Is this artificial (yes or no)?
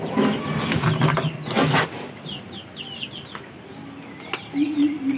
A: no